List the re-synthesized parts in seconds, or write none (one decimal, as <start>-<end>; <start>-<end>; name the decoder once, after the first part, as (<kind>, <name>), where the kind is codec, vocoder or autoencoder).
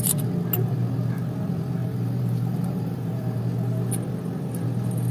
1.8-3.4 (vocoder, BigVGAN v2)